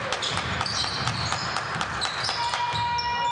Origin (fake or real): real